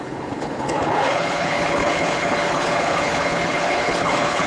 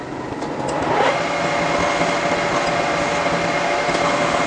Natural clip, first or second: second